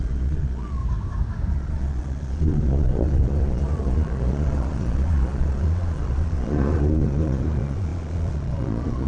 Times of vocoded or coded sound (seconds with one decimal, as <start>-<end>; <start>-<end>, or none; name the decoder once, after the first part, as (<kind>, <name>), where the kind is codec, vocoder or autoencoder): 0.0-0.8 (vocoder, Vocos); 1.5-9.1